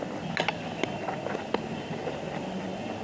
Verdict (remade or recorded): recorded